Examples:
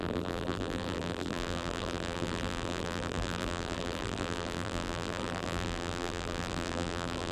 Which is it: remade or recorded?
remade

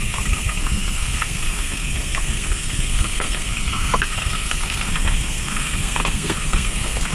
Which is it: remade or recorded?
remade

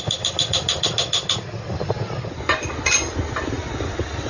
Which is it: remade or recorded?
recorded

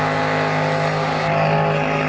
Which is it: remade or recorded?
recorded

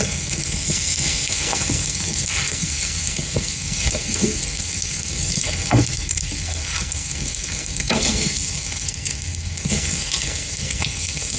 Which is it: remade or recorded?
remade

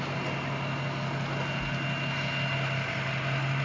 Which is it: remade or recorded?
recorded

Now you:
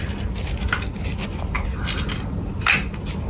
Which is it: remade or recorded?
recorded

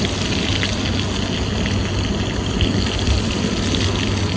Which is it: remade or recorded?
recorded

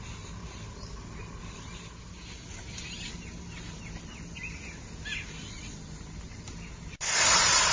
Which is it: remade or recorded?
recorded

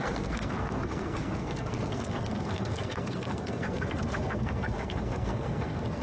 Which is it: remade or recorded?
remade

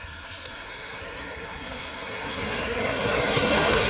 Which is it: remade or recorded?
remade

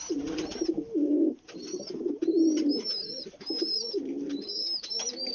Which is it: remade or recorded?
recorded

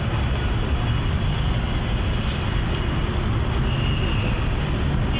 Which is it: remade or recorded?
recorded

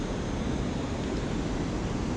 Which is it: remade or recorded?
recorded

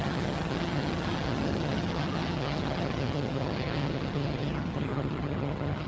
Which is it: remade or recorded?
remade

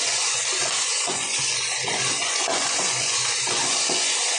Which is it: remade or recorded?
remade